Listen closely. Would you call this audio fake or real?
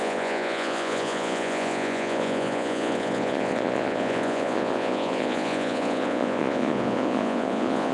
fake